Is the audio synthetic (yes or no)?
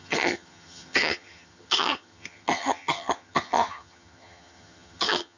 yes